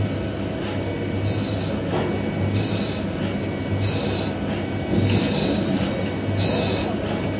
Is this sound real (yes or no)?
yes